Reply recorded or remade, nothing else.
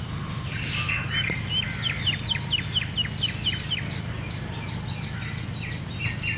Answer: recorded